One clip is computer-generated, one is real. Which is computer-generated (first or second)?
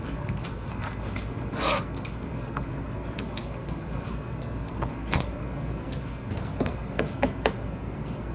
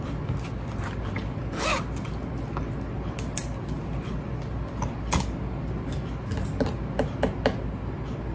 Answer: first